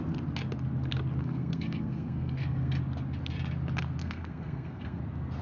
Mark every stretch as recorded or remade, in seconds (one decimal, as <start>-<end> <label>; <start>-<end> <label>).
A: 0.0-1.2 recorded; 1.2-2.8 remade; 2.8-4.0 recorded; 4.0-5.0 remade; 5.0-5.4 recorded